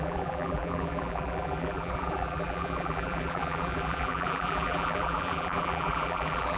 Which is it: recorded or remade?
remade